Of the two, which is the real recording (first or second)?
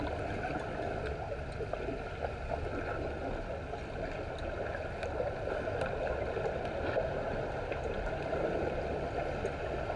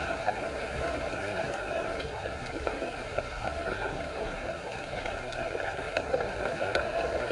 first